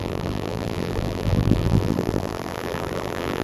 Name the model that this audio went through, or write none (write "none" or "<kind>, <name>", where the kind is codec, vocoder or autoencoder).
vocoder, BigVGAN v2